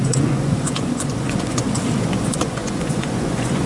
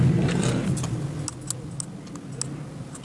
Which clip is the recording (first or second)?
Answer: second